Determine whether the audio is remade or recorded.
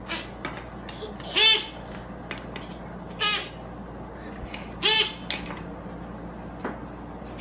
recorded